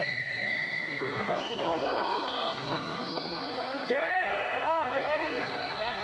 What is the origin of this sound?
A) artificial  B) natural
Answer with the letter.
A